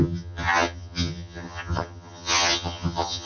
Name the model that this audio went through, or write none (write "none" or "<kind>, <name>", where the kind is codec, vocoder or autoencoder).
vocoder, HiFi-GAN